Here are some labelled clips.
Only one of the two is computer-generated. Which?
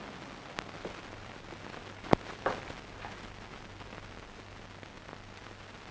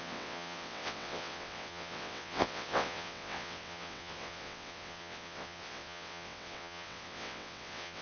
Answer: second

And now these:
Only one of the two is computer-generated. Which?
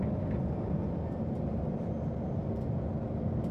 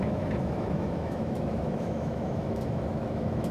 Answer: second